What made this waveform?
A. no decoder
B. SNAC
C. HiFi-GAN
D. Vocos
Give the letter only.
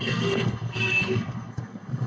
B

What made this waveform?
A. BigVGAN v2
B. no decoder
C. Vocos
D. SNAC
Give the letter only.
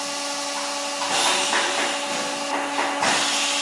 B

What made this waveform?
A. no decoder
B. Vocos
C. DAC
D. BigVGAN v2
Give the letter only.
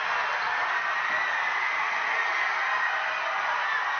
A